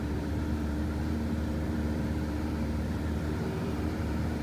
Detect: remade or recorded remade